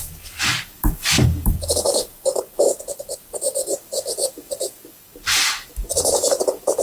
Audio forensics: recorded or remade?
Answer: remade